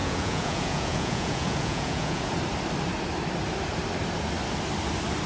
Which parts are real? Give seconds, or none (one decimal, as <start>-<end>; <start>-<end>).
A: 2.3-5.3